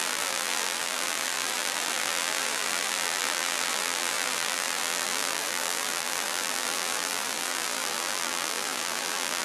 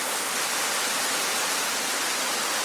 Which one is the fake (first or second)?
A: first